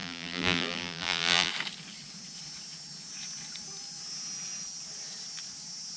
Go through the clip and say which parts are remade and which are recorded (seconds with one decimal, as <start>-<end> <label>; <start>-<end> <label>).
0.0-1.5 remade; 1.5-6.0 recorded